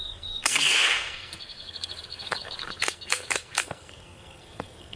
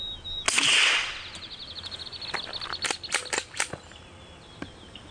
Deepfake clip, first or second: first